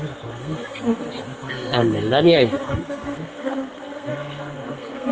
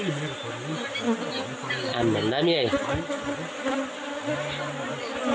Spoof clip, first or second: first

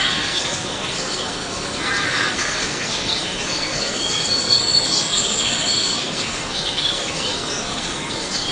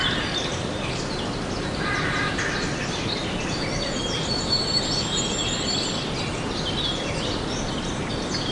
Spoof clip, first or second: first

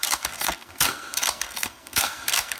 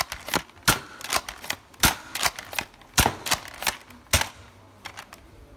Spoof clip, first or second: first